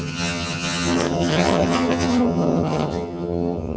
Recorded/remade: remade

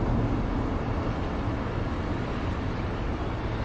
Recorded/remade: recorded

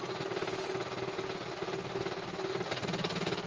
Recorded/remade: recorded